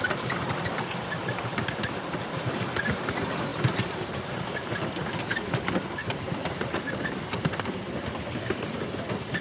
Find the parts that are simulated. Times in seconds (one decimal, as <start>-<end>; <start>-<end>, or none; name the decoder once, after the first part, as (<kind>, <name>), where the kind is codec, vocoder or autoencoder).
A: 3.5-4.8 (vocoder, BigVGAN v2); 6.0-7.0